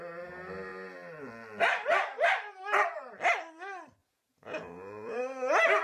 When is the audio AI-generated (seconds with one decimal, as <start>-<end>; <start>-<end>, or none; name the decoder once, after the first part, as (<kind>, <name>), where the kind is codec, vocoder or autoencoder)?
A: 4.0-5.2 (vocoder, Vocos)